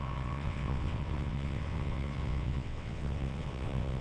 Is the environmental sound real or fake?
fake